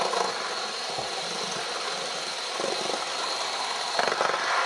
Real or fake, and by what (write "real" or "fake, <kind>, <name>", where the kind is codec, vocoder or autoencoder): real